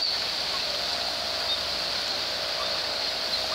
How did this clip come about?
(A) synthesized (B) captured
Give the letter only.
B